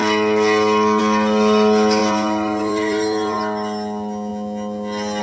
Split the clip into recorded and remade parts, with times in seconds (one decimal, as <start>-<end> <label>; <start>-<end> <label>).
0.0-2.0 recorded; 2.0-3.4 remade; 3.4-5.2 recorded